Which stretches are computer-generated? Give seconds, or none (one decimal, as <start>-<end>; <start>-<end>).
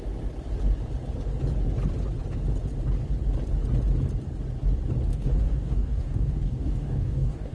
5.1-7.5